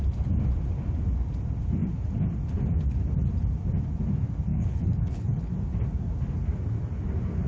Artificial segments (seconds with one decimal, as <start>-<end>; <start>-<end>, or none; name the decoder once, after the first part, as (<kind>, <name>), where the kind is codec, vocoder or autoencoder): 4.5-5.5 (codec, HILCodec)